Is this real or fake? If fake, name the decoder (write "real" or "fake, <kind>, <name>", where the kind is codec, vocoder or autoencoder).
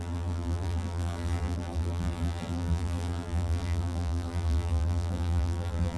fake, vocoder, BigVGAN v2